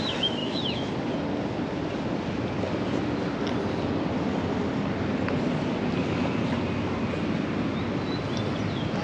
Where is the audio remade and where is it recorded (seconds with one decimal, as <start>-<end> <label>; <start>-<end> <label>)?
0.0-0.4 recorded; 0.4-0.9 remade; 0.9-9.0 recorded